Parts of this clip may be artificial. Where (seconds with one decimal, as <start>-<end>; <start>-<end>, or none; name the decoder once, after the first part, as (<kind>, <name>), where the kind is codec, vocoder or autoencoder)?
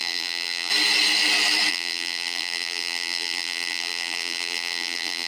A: 0.0-0.7 (vocoder, BigVGAN v2); 1.7-5.3